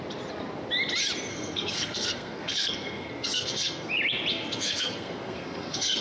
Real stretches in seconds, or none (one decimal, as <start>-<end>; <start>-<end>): 0.0-1.3; 3.9-4.3